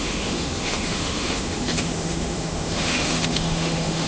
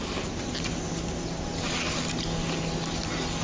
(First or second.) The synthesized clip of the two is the first